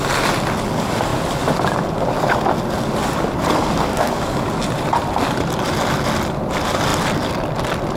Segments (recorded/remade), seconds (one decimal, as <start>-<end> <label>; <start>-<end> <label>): 0.0-3.5 recorded; 3.5-4.6 remade; 4.6-8.0 recorded